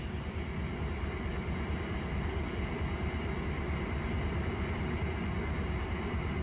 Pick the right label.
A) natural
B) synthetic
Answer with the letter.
A